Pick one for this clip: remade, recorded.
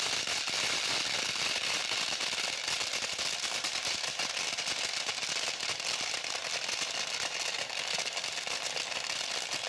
recorded